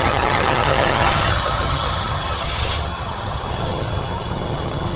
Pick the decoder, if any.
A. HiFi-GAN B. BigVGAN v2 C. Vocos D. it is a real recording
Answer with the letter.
A